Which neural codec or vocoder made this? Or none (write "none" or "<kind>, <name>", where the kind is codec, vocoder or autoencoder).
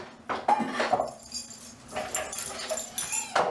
none